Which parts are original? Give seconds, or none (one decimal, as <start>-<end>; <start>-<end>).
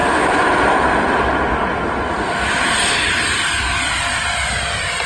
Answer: 0.0-5.1